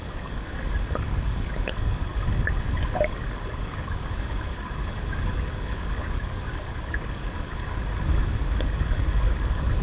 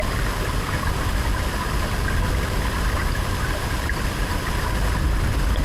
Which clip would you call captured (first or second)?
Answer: second